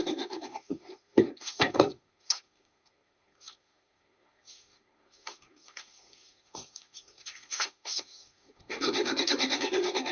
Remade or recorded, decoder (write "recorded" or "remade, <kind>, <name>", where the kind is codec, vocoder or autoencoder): remade, codec, SNAC